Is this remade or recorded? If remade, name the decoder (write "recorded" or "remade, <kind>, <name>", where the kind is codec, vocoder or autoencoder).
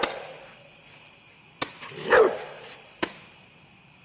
recorded